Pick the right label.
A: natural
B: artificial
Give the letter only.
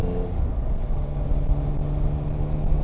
A